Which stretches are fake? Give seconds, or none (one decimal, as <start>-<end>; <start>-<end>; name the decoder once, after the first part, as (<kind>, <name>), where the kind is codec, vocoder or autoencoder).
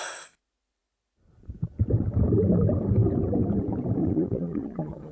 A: 4.0-5.1 (vocoder, Vocos)